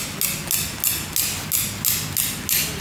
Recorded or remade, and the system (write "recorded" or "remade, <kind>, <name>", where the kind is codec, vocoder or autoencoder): recorded